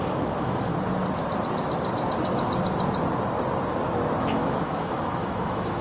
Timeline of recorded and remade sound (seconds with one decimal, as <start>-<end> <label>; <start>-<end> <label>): 0.0-0.7 remade; 0.7-4.2 recorded; 4.2-5.8 remade